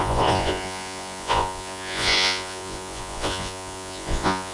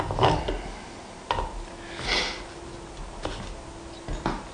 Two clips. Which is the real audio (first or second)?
second